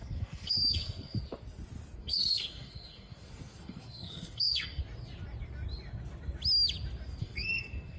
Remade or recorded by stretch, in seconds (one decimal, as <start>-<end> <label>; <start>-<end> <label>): 0.0-1.2 remade; 1.2-2.0 recorded; 2.0-4.8 remade; 4.8-7.2 recorded; 7.2-8.0 remade